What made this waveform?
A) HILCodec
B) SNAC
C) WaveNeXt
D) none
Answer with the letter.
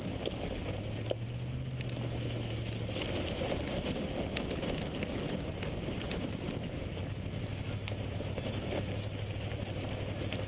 D